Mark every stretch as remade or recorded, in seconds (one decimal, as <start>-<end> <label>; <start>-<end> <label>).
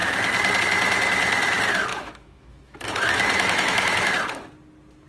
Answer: 0.0-1.9 recorded; 1.9-4.1 remade; 4.1-5.1 recorded